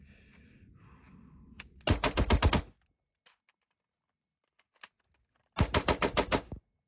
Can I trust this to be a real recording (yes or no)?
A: yes